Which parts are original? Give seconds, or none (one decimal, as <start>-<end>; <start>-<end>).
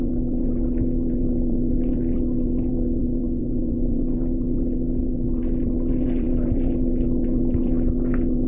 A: 0.0-3.4; 4.0-8.5